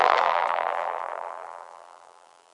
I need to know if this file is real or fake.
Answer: fake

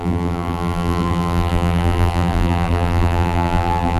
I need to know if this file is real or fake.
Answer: fake